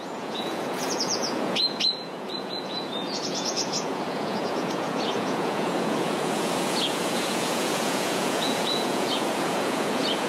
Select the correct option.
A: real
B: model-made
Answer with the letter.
B